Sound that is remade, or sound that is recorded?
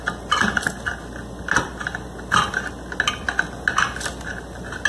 recorded